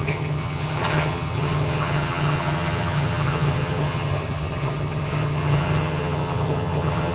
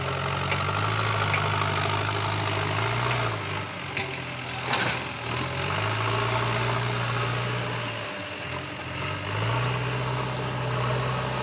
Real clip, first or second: second